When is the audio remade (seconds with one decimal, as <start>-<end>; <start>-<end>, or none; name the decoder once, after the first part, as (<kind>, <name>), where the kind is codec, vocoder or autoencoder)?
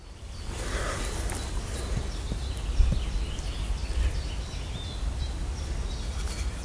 none